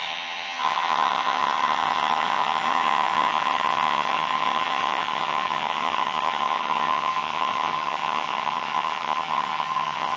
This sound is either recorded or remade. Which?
remade